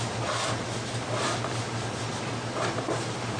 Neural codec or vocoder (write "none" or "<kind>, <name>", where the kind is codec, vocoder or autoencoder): none